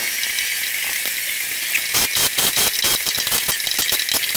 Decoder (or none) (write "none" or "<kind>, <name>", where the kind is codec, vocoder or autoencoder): none